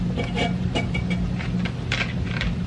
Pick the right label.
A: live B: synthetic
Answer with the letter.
A